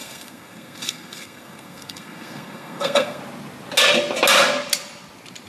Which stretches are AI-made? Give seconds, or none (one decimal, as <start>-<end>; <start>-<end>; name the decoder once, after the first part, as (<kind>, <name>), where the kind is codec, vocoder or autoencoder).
0.0-3.2 (codec, SNAC)